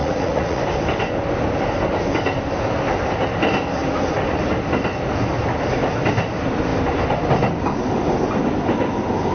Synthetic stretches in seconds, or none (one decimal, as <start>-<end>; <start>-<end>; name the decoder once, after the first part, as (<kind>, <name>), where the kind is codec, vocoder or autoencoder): 0.0-0.6 (vocoder, Vocos)